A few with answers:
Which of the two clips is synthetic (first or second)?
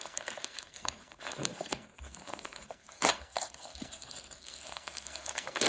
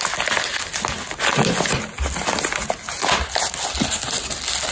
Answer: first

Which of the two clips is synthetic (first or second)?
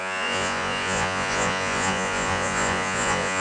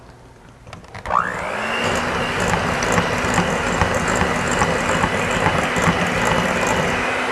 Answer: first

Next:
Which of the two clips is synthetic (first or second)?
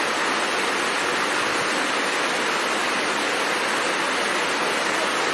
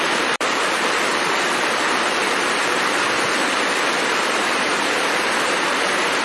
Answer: second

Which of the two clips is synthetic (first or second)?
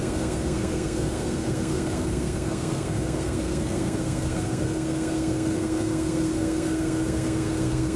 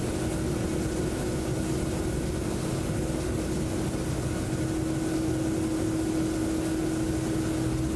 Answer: first